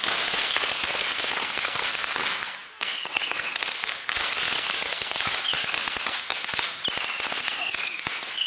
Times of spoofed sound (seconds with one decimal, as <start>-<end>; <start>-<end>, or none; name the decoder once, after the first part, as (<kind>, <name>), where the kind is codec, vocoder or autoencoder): 0.0-6.8 (codec, SNAC); 7.3-8.5